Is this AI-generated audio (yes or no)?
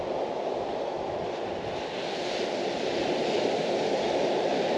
no